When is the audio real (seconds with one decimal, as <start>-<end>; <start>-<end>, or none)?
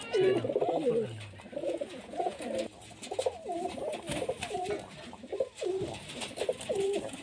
0.0-1.6; 2.4-7.2